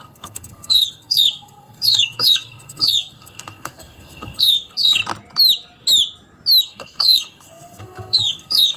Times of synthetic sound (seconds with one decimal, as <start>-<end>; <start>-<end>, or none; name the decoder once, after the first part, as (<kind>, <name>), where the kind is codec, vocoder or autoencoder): 0.0-5.0 (codec, SNAC); 6.6-8.8

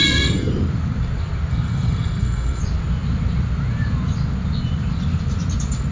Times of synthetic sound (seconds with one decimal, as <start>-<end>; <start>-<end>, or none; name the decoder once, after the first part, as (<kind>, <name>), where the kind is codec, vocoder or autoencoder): 0.0-0.5 (codec, SNAC); 1.5-2.6

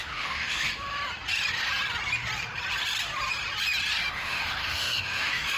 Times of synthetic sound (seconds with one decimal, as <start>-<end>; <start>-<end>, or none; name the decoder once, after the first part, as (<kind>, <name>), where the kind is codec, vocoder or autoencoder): 0.0-0.7 (autoencoder, DAC-VAE); 4.1-5.6

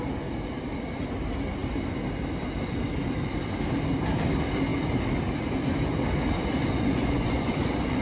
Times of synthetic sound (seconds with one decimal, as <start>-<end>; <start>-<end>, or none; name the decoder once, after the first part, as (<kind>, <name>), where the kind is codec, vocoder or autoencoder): 6.6-8.0 (vocoder, Vocos)

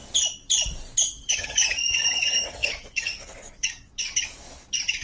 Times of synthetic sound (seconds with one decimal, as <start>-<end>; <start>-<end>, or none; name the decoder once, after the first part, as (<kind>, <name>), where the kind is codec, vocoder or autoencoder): 1.3-5.0 (codec, DAC)

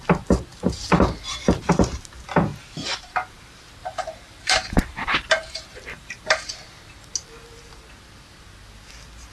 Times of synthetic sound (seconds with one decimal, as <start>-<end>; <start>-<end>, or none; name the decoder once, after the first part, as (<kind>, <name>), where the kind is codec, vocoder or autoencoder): 0.5-1.7 (vocoder, BigVGAN v2); 2.5-3.1; 3.8-6.4

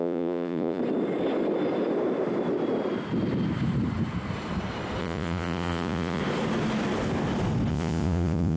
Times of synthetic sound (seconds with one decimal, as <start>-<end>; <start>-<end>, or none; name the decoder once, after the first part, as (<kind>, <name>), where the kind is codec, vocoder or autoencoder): 0.0-0.8 (vocoder, Vocos); 5.0-6.2; 7.7-8.6